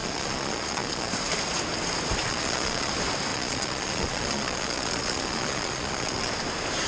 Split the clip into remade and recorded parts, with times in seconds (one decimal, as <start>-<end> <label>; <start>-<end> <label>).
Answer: 0.0-1.1 remade; 1.1-2.2 recorded; 2.2-2.9 remade; 2.9-3.3 recorded; 3.3-6.3 remade; 6.3-6.9 recorded